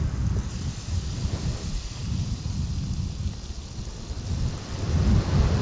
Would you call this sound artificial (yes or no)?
no